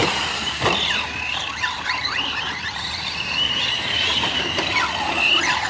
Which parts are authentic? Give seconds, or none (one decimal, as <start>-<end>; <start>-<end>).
0.7-1.3; 4.7-5.7